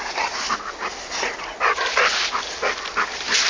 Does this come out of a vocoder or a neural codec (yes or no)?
no